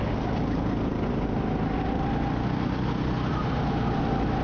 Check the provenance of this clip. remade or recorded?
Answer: recorded